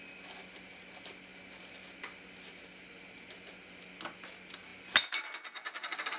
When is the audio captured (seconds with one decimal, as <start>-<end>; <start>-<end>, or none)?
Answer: 0.0-6.2